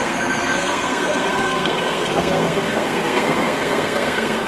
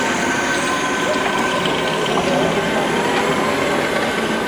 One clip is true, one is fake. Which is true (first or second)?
second